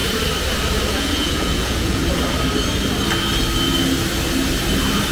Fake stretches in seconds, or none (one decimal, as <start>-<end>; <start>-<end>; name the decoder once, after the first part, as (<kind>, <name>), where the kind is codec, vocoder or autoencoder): 0.9-2.0 (vocoder, Vocos)